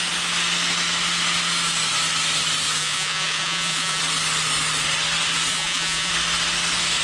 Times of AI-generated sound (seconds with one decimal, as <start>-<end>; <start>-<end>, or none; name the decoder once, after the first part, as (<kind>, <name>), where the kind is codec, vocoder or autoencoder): 2.8-4.0 (vocoder, Vocos); 5.5-6.1